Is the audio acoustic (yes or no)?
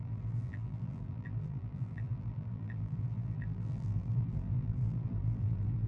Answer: no